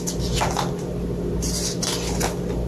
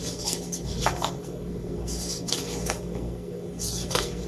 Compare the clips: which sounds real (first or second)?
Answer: first